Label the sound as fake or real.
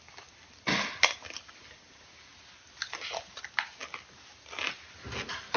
real